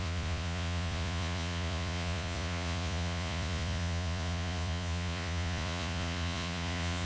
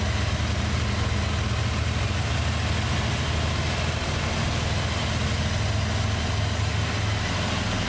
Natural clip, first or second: second